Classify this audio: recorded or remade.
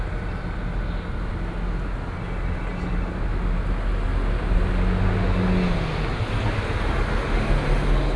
recorded